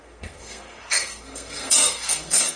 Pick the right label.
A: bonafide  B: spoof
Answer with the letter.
B